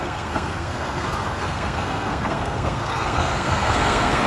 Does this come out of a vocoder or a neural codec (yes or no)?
yes